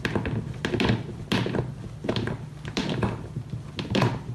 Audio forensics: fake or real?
real